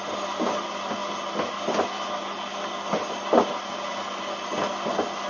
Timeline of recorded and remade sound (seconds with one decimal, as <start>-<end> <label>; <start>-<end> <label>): 0.0-5.3 recorded